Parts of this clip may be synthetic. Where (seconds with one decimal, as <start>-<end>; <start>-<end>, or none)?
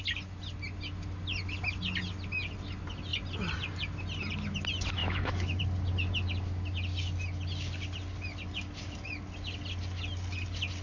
5.0-5.6